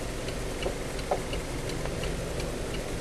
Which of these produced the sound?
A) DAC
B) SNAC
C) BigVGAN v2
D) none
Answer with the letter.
D